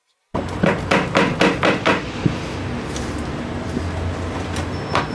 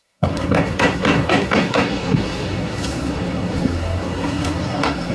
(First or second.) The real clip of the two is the first